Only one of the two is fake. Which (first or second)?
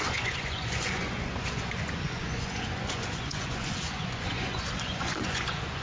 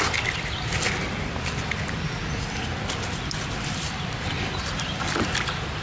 first